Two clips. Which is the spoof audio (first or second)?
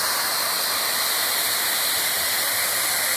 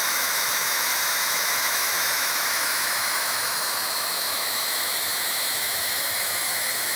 second